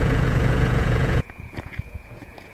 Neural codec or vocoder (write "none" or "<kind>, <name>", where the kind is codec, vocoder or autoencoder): vocoder, Vocos